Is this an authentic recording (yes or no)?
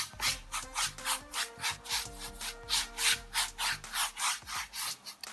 yes